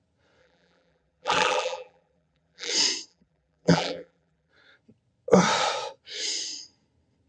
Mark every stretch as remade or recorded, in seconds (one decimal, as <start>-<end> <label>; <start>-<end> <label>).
0.0-0.4 recorded; 0.4-2.7 remade; 2.7-3.1 recorded; 3.1-4.5 remade; 4.5-7.3 recorded